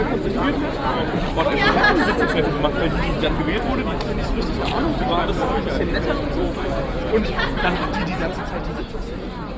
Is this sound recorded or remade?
recorded